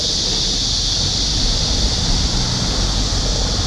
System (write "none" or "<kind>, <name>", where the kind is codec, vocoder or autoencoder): none